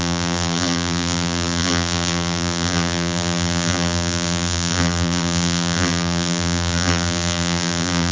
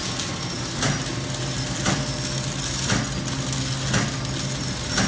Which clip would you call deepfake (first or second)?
first